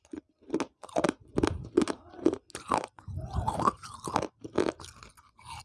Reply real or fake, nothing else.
real